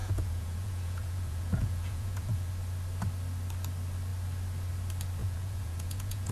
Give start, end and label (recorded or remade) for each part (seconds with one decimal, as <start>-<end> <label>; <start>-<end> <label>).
0.0-2.5 remade; 2.5-5.2 recorded; 5.2-6.3 remade